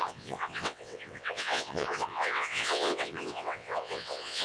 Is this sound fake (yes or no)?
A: yes